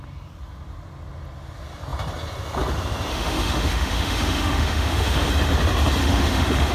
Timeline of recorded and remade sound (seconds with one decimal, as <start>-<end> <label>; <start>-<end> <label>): 0.0-3.1 recorded; 3.1-5.3 remade; 5.3-6.0 recorded; 6.0-6.7 remade